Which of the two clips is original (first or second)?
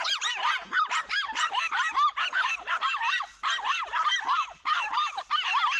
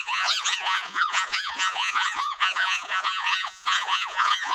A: first